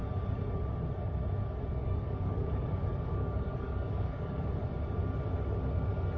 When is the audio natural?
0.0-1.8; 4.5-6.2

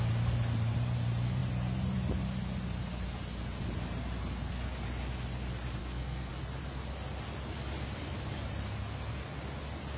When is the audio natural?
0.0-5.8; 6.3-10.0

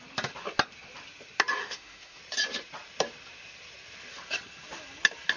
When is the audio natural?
0.0-1.6; 2.2-5.4

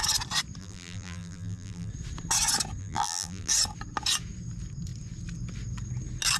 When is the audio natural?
0.0-0.6; 1.9-2.8; 3.5-6.4

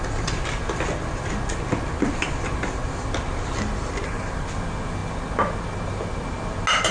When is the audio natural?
0.0-6.9

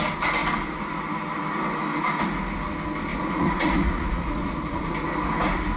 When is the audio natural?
0.0-3.1; 4.9-5.8

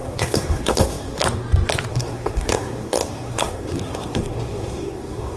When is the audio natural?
1.2-1.9